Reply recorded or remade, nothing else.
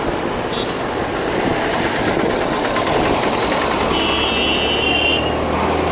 recorded